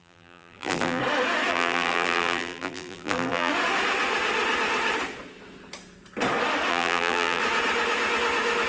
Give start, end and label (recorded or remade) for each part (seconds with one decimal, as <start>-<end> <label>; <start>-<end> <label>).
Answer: 0.0-1.0 remade; 1.0-1.5 recorded; 1.5-3.5 remade; 3.5-6.7 recorded; 6.7-7.4 remade; 7.4-8.7 recorded